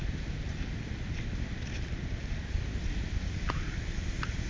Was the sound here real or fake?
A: real